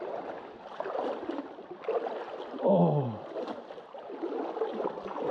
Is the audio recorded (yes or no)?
yes